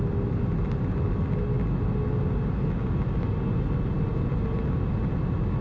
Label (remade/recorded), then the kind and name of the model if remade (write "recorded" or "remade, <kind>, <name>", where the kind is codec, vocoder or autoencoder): recorded